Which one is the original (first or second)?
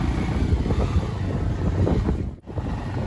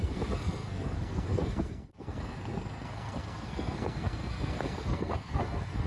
first